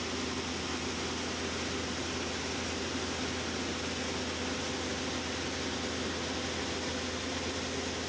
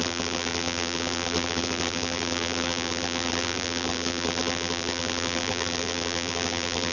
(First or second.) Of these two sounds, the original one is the first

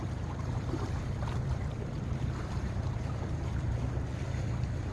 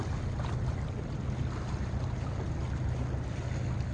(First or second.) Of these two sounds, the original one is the second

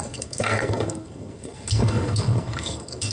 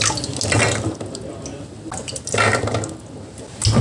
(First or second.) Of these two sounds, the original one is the second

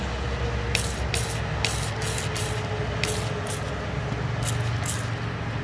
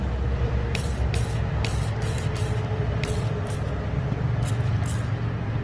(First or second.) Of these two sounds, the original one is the first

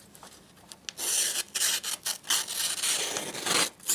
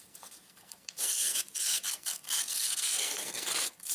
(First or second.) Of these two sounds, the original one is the first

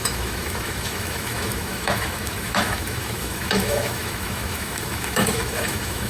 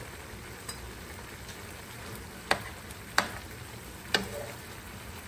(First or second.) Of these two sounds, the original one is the second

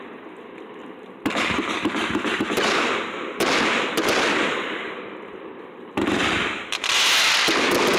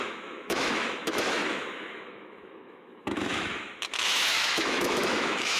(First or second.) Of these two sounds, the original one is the first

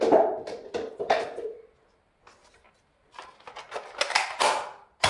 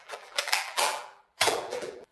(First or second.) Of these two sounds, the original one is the first